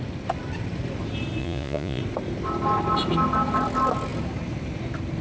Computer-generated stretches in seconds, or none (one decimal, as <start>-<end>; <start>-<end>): 1.4-2.0